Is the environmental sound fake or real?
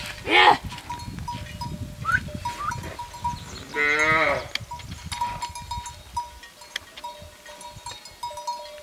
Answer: real